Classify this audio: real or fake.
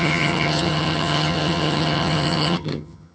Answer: fake